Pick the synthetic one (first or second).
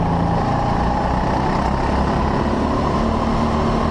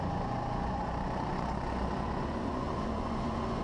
second